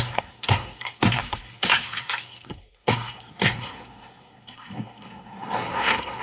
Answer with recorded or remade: remade